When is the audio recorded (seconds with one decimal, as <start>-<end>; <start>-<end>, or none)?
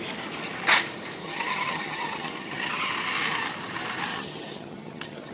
0.0-1.2; 2.9-4.1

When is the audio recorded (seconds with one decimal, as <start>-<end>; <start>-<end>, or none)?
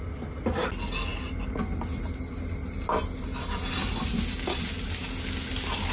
0.0-5.9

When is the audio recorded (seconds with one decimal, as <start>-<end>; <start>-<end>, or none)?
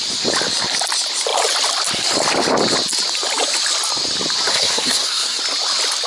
0.0-4.5; 5.4-6.1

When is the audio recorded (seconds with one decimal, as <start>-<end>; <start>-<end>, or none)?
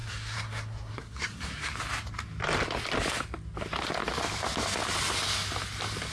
1.7-6.1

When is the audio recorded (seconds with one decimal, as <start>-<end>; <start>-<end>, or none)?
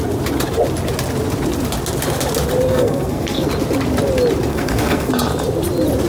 0.0-2.7; 3.5-4.5; 5.1-6.1